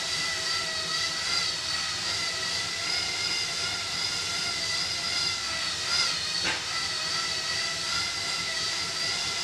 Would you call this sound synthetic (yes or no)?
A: no